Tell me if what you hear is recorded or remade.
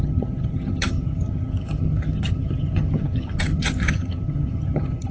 remade